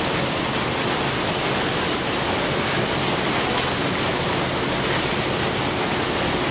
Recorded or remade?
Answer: recorded